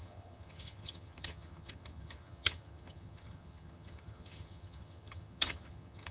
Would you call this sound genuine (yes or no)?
no